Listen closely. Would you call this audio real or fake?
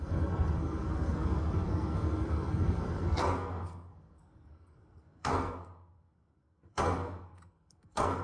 fake